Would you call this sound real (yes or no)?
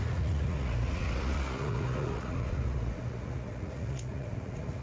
no